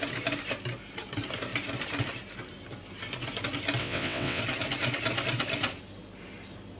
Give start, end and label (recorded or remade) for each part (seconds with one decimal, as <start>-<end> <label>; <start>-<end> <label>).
0.0-3.8 recorded; 3.8-4.4 remade; 4.4-6.8 recorded

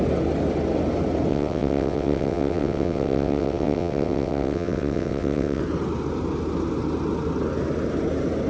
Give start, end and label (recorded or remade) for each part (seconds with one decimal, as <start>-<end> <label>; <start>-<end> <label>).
0.0-1.3 recorded; 1.3-5.6 remade; 5.6-8.5 recorded

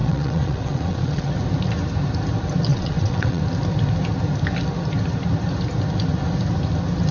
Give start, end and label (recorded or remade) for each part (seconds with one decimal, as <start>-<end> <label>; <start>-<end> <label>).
0.0-1.3 remade; 1.3-2.7 recorded; 2.7-3.4 remade; 3.4-7.1 recorded

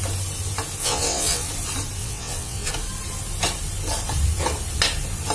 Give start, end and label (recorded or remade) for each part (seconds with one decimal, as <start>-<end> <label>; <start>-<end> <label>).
0.0-0.8 recorded; 0.8-1.5 remade; 1.5-2.0 recorded; 2.0-2.7 remade; 2.7-5.3 recorded

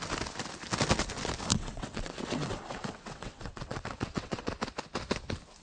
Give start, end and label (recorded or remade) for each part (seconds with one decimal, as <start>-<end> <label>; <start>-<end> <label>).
0.0-1.5 recorded; 1.5-4.5 remade; 4.5-5.6 recorded

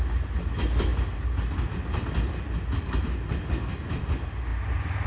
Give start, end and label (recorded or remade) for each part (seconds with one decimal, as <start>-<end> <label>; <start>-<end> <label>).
0.0-5.1 recorded

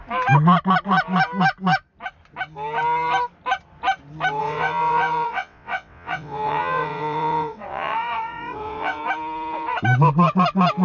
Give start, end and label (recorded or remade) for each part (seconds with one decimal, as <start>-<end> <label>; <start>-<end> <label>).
0.0-4.4 recorded; 4.4-9.0 remade; 9.0-10.8 recorded

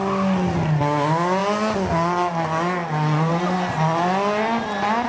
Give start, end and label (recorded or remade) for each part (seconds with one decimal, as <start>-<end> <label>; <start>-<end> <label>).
0.0-5.1 recorded